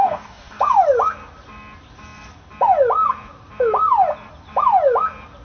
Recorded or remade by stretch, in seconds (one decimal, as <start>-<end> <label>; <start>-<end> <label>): 0.0-0.6 remade; 0.6-5.4 recorded